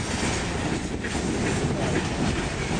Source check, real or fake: real